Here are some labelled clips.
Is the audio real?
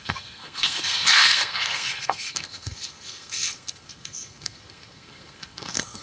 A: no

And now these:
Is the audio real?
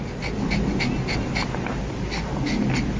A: yes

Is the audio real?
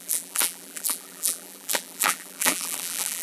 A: no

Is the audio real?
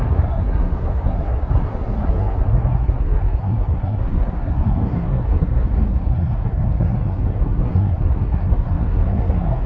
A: no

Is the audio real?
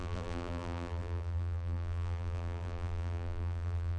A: no